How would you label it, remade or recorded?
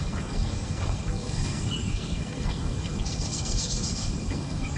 remade